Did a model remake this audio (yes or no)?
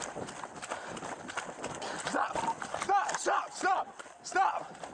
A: no